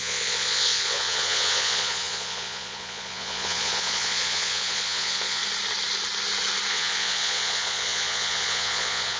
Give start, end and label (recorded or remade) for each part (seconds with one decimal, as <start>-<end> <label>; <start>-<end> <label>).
0.0-5.4 remade; 5.4-6.7 recorded; 6.7-9.2 remade